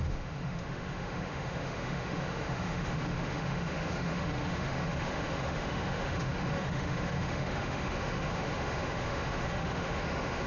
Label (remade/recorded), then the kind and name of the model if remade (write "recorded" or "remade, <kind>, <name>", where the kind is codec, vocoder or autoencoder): remade, autoencoder, DAC-VAE